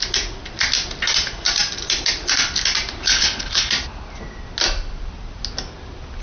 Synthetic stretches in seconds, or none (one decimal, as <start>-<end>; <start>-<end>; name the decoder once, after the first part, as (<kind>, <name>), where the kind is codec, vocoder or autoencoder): 3.0-3.7 (codec, HILCodec)